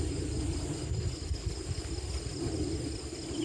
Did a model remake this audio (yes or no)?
no